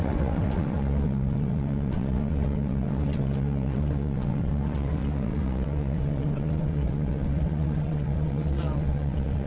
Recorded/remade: remade